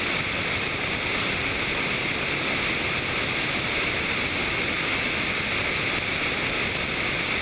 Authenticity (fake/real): real